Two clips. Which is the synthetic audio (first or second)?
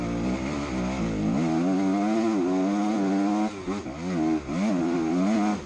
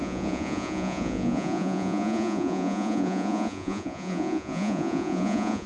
second